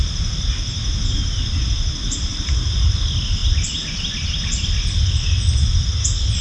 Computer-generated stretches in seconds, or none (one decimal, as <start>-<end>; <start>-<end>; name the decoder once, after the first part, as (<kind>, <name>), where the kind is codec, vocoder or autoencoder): none